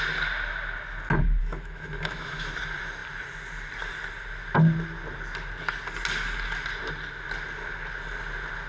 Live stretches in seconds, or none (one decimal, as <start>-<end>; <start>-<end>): 0.0-1.4; 2.6-8.7